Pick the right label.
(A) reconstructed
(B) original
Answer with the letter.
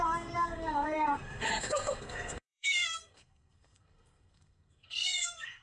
A